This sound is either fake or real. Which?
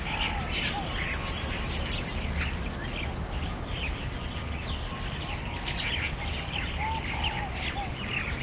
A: real